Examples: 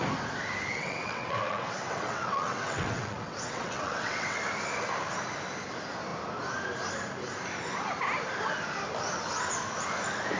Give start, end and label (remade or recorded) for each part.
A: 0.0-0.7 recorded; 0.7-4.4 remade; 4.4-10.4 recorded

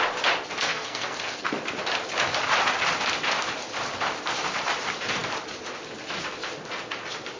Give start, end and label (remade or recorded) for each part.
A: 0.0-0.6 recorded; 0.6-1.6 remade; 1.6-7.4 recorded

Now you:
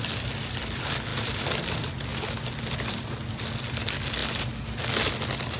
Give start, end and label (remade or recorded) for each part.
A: 0.0-1.1 recorded; 1.1-1.6 remade; 1.6-5.6 recorded

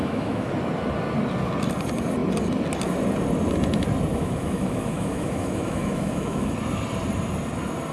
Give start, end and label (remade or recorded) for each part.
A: 0.0-0.5 remade; 0.5-4.1 recorded; 4.1-6.5 remade; 6.5-7.9 recorded

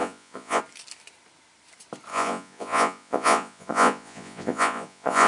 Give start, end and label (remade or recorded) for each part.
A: 0.0-0.6 remade; 0.6-2.1 recorded; 2.1-5.3 remade

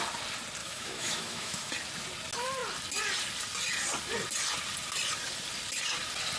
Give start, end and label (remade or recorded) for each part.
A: 0.0-0.6 recorded; 0.6-1.7 remade; 1.7-6.4 recorded

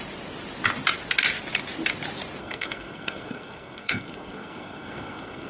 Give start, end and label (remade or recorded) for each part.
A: 0.0-2.4 recorded; 2.4-5.5 remade